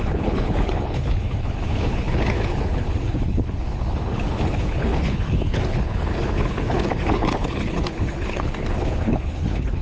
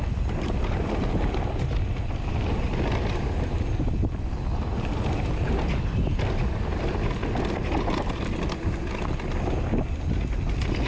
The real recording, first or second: second